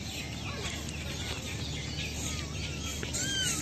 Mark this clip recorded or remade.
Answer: recorded